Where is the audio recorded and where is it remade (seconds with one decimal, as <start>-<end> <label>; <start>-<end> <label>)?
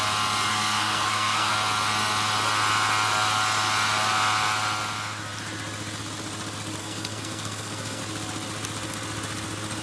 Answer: 0.0-0.5 recorded; 0.5-1.5 remade; 1.5-6.8 recorded; 6.8-8.0 remade; 8.0-9.8 recorded